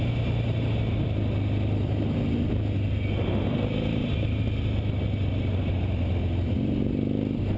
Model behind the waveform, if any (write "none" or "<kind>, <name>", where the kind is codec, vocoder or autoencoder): none